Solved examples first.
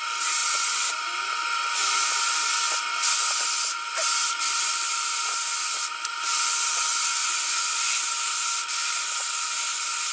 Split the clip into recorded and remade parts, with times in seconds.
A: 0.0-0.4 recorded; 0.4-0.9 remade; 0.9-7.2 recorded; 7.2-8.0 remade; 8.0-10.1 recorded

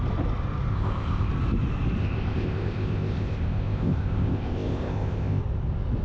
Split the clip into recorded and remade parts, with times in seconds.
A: 0.0-0.7 recorded; 0.7-1.3 remade; 1.3-2.0 recorded; 2.0-5.4 remade; 5.4-6.0 recorded

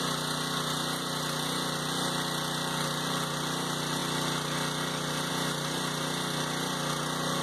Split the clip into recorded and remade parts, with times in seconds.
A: 0.0-7.4 recorded

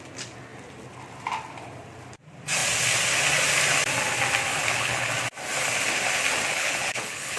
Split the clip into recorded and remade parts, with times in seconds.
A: 0.0-4.5 recorded; 4.5-5.1 remade; 5.1-6.5 recorded; 6.5-7.4 remade

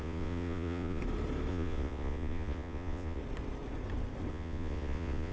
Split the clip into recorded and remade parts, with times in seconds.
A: 0.0-1.0 remade; 1.0-1.5 recorded; 1.5-3.2 remade; 3.2-4.3 recorded; 4.3-5.3 remade